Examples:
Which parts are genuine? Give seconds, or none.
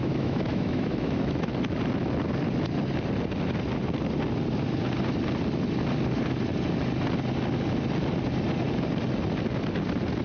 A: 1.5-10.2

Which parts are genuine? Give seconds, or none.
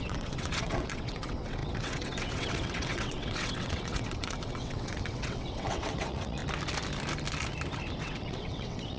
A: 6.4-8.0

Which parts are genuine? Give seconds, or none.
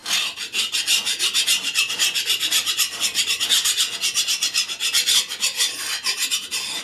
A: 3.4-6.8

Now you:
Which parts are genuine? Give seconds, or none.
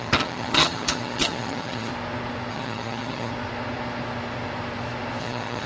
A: 1.9-2.5; 3.3-5.2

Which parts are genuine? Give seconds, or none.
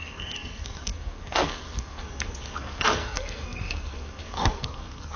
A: none